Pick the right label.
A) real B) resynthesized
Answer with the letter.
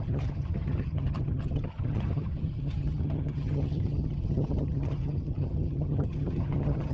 B